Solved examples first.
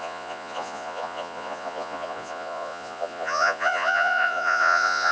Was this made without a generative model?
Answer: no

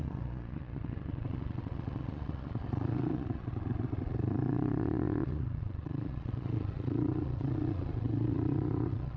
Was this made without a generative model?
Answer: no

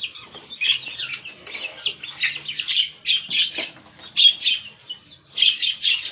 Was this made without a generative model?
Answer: yes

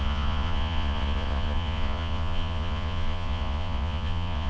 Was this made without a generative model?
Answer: no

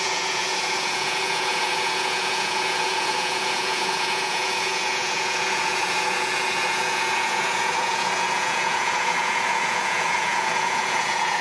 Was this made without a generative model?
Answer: no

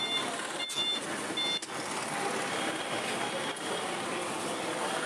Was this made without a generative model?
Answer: yes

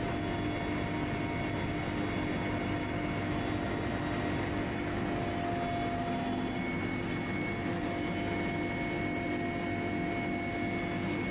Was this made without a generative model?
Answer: yes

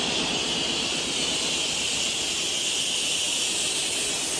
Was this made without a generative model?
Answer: yes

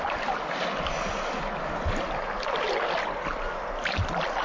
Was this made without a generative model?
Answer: yes